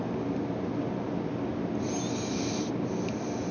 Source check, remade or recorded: recorded